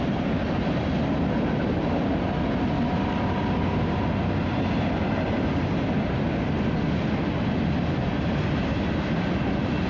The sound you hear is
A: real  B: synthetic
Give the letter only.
A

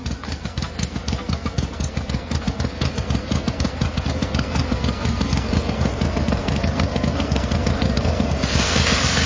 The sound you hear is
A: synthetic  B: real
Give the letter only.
A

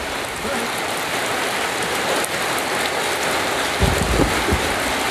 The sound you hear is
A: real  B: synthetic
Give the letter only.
A